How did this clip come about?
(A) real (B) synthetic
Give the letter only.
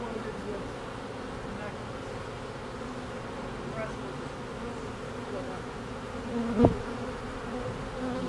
A